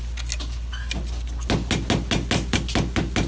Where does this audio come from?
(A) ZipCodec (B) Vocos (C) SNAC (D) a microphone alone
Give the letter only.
D